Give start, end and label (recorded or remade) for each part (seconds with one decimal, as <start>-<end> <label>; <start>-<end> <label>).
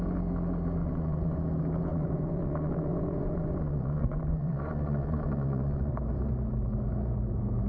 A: 0.0-0.8 recorded; 0.8-1.4 remade; 1.4-1.9 recorded; 1.9-5.9 remade; 5.9-7.7 recorded